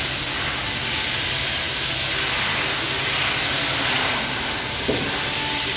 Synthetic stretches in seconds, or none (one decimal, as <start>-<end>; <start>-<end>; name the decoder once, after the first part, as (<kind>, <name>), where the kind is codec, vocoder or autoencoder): none